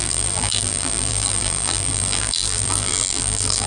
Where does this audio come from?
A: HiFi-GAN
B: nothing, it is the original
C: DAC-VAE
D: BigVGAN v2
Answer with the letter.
D